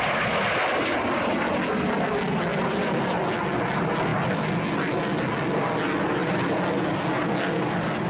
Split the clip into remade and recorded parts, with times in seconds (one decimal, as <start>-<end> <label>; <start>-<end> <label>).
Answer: 0.0-8.1 recorded